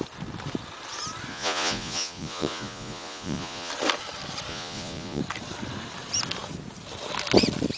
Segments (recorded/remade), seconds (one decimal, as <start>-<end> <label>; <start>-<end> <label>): 0.0-1.3 recorded; 1.3-3.7 remade; 3.7-4.5 recorded; 4.5-5.2 remade; 5.2-7.8 recorded